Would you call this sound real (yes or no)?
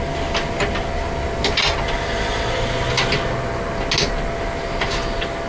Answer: yes